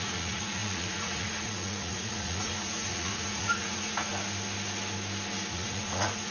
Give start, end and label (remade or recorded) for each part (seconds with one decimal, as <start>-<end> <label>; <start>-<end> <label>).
0.0-4.1 remade; 4.1-5.5 recorded; 5.5-6.3 remade